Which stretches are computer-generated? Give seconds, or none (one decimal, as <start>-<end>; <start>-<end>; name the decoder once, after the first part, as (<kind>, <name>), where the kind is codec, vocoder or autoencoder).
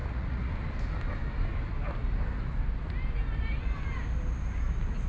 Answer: 0.0-0.5 (vocoder, Vocos)